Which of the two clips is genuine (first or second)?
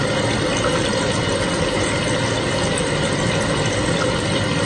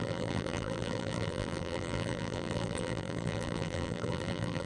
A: first